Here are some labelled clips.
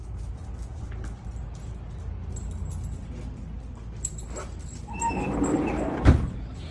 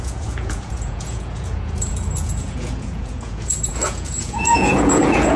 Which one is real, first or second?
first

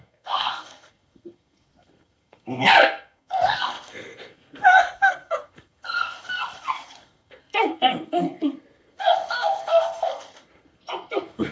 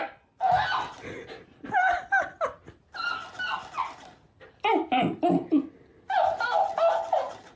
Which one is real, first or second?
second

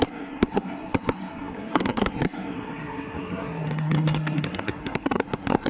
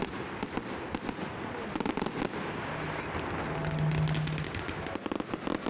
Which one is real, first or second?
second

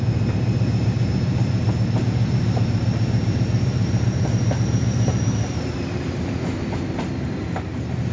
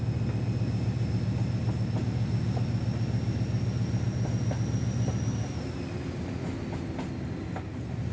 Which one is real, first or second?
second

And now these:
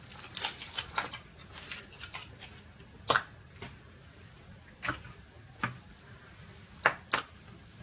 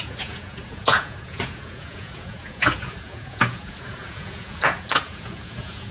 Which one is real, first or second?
first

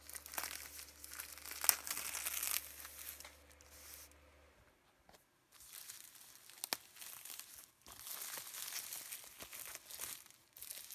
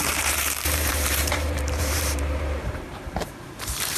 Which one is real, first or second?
first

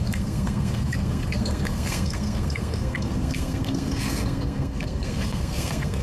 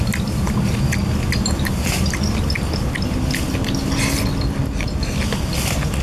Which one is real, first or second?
second